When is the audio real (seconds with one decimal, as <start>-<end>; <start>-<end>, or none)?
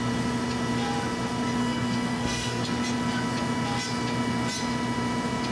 0.0-1.6; 2.6-5.5